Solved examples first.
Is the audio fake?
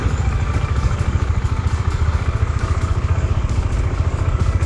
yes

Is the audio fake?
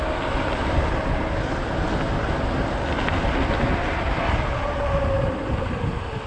no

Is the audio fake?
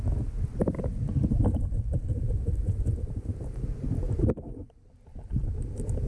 yes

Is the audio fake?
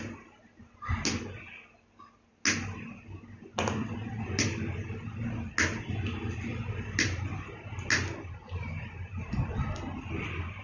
no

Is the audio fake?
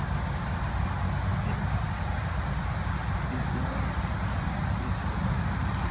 no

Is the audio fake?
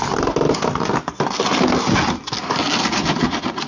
no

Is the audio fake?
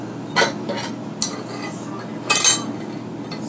no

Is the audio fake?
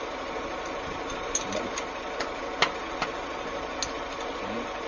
no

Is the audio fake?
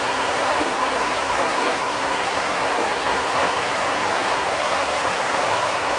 yes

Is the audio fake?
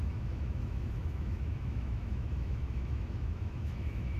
yes